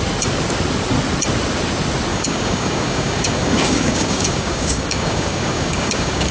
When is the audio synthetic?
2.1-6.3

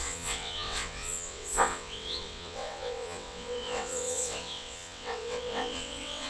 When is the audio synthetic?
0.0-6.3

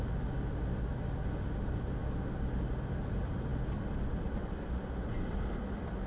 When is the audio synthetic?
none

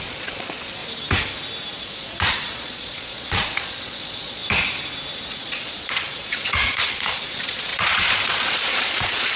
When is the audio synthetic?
0.0-0.8; 1.8-4.4; 5.3-9.4

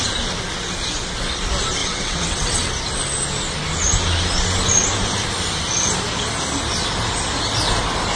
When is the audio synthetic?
1.8-2.7